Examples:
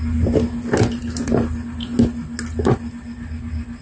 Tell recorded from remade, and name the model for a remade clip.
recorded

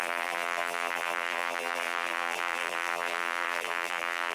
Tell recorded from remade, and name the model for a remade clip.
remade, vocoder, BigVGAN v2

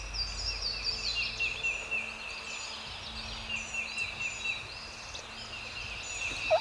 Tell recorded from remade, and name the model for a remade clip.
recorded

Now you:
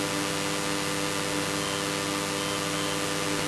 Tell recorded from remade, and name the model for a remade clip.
recorded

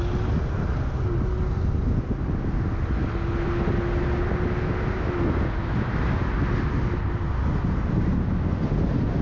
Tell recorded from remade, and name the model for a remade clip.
recorded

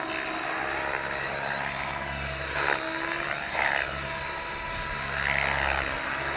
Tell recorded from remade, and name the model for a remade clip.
recorded